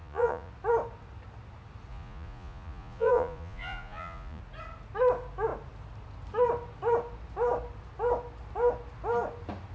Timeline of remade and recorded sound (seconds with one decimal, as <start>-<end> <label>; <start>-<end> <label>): 0.0-0.5 remade; 0.5-1.9 recorded; 1.9-4.4 remade; 4.4-9.7 recorded